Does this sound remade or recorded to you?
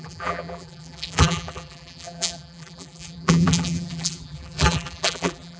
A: remade